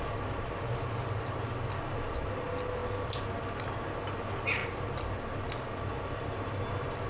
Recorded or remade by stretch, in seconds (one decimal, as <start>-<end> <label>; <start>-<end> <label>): 0.0-7.1 recorded